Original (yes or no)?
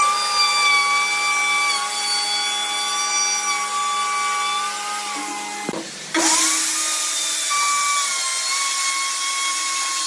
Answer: yes